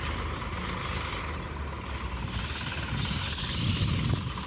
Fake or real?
real